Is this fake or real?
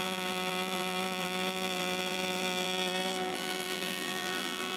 fake